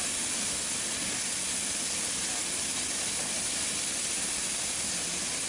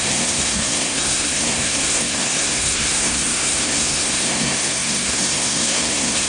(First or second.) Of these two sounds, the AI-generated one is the second